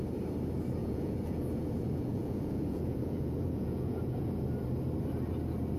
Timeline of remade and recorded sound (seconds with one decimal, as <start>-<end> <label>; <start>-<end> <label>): 0.0-0.8 recorded; 0.8-4.3 remade; 4.3-5.8 recorded